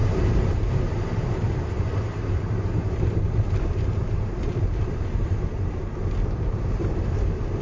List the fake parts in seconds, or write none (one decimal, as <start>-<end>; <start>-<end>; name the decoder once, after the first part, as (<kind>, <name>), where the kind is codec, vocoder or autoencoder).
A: 0.0-7.6 (vocoder, BigVGAN v2)